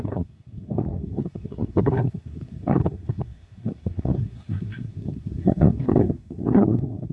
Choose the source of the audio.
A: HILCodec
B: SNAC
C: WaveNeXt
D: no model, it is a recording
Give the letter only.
B